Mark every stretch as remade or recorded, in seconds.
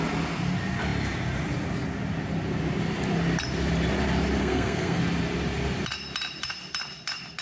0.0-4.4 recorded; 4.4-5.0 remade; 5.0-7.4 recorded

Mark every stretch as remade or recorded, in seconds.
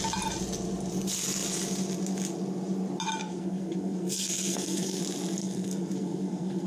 0.0-3.2 recorded; 3.2-5.0 remade; 5.0-5.4 recorded; 5.4-6.7 remade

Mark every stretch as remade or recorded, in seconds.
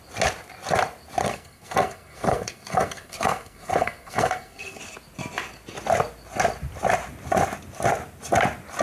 0.0-1.2 recorded; 1.2-4.8 remade; 4.8-8.8 recorded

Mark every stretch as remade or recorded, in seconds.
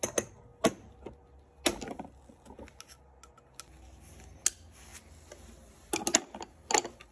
0.0-7.1 recorded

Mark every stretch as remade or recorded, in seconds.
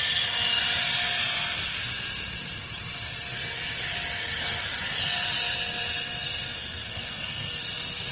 0.0-6.9 recorded; 6.9-7.6 remade; 7.6-8.1 recorded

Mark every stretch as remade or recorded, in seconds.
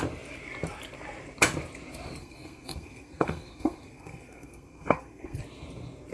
0.0-2.2 recorded; 2.2-5.4 remade; 5.4-6.1 recorded